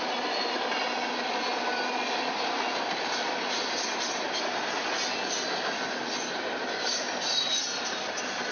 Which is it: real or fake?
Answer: real